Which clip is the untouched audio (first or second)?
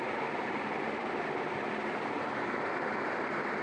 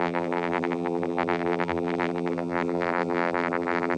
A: first